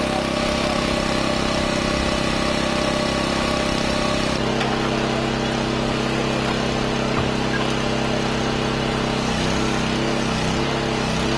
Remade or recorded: recorded